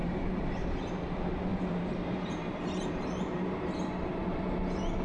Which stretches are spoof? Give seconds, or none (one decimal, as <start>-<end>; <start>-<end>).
0.0-0.9; 1.5-4.5